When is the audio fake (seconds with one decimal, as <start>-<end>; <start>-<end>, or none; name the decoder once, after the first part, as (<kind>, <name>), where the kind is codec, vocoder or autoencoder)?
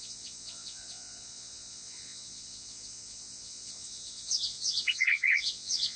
0.0-6.0 (vocoder, Vocos)